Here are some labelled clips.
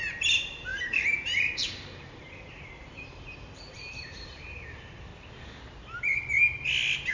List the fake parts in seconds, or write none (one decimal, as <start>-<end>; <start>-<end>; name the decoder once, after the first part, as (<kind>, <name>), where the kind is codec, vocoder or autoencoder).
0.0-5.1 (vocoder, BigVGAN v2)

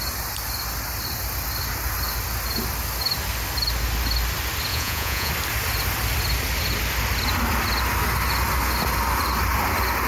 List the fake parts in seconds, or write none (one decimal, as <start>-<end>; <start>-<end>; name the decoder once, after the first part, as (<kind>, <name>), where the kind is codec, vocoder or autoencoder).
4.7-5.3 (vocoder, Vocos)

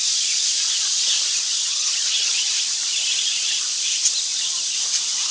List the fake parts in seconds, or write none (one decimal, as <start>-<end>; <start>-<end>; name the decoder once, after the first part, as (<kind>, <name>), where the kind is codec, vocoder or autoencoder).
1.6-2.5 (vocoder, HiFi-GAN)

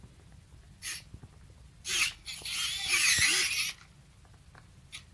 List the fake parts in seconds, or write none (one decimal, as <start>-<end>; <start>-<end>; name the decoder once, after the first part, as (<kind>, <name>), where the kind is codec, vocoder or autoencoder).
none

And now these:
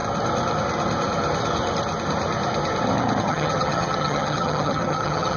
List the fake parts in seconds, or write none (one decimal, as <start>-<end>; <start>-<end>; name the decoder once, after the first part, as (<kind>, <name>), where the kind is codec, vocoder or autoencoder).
3.2-5.4 (vocoder, HiFi-GAN)